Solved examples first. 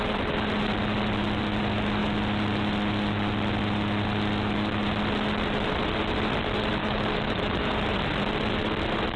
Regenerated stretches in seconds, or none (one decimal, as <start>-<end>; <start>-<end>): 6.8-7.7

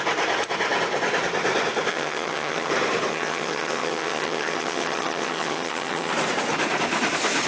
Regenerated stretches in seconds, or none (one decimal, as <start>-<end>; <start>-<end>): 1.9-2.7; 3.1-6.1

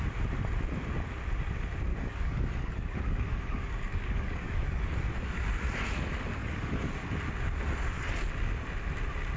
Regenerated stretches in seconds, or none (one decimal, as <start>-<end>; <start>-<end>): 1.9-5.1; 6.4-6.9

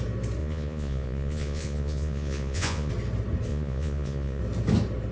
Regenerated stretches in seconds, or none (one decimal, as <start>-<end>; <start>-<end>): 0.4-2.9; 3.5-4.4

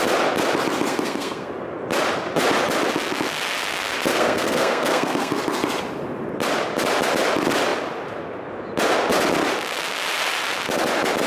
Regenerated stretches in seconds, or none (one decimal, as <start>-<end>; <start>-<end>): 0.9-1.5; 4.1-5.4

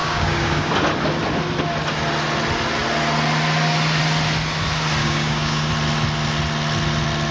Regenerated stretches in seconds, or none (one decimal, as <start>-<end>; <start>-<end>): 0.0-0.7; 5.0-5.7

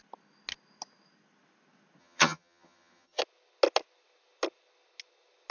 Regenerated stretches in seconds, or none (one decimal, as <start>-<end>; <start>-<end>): 2.0-3.2